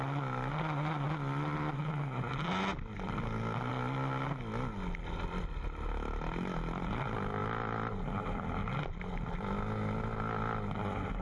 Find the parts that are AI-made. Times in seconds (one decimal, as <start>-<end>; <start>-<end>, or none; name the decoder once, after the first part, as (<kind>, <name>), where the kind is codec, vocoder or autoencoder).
none